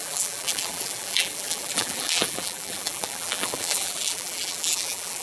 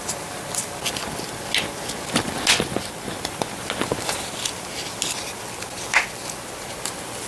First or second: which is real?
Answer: second